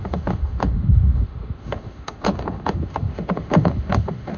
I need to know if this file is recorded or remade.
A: remade